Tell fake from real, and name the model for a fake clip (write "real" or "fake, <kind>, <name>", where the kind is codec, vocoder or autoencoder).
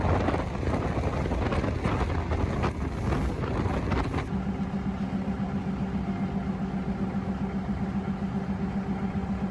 real